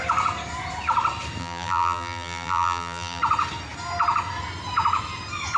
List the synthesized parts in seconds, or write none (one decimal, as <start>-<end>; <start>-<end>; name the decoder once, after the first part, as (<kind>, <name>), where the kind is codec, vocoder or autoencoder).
1.4-3.2 (vocoder, BigVGAN v2)